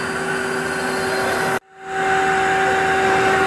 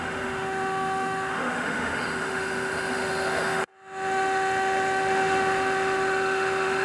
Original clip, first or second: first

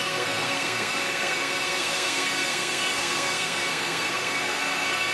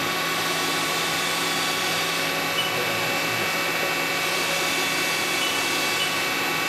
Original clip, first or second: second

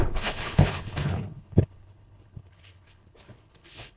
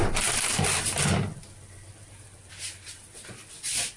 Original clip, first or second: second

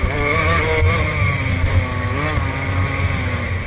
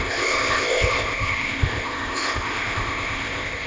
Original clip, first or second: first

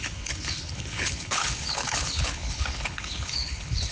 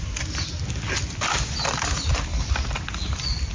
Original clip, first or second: second